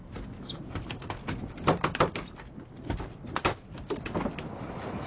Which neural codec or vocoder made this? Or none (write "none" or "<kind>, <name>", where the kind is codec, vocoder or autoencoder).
none